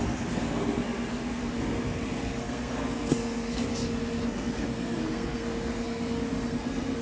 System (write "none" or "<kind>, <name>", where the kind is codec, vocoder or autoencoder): codec, SNAC